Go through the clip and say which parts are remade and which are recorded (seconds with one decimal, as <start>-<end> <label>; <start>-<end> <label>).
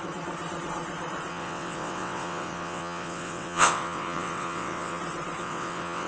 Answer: 0.0-1.3 recorded; 1.3-5.0 remade; 5.0-5.4 recorded; 5.4-6.1 remade